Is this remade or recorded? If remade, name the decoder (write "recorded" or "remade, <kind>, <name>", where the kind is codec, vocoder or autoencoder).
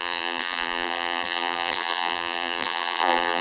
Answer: remade, vocoder, BigVGAN v2